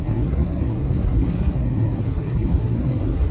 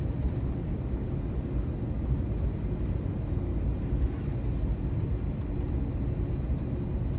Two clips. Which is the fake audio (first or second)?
first